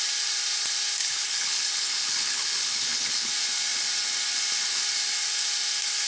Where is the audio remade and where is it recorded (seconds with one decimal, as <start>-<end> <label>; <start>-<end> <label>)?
0.0-1.0 recorded; 1.0-3.3 remade; 3.3-6.1 recorded